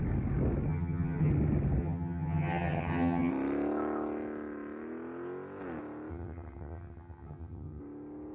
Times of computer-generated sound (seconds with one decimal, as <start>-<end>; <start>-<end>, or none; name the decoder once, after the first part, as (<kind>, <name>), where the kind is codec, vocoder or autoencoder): 0.7-1.3 (vocoder, HiFi-GAN); 1.8-3.3; 6.1-7.8